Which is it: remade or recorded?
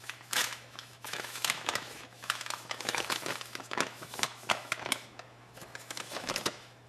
remade